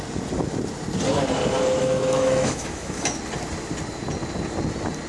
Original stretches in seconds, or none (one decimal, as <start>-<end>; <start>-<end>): 0.0-1.8; 3.2-5.1